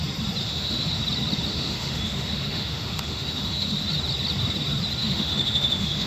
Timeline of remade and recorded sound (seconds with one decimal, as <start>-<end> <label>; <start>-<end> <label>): 0.0-0.4 recorded; 0.4-1.0 remade; 1.0-1.5 recorded; 1.5-3.8 remade; 3.8-5.0 recorded; 5.0-6.1 remade